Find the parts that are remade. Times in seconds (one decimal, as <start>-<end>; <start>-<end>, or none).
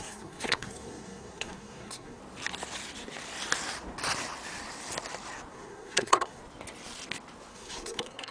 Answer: 0.0-2.2; 5.5-6.4; 7.5-8.3